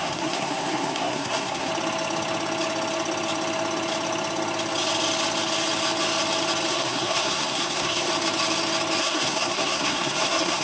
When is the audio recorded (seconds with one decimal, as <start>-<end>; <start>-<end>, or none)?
1.7-6.7; 8.1-9.0